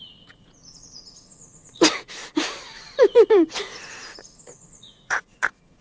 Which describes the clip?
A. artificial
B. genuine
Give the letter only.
A